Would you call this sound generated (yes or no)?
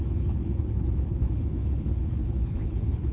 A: yes